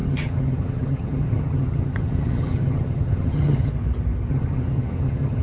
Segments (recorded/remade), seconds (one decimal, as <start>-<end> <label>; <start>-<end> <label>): 0.0-3.7 remade; 3.7-4.3 recorded; 4.3-5.4 remade